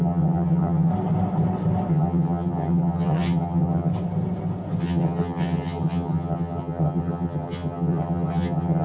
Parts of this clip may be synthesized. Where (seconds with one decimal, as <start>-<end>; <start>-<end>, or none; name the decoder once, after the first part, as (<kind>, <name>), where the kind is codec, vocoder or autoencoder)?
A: 0.0-0.9 (vocoder, HiFi-GAN); 1.9-3.9; 4.8-8.8